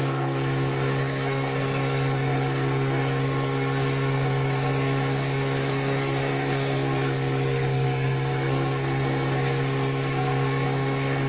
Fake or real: fake